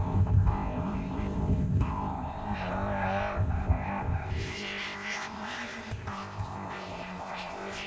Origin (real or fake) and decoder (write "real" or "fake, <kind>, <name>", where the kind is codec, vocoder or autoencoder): fake, codec, ZipCodec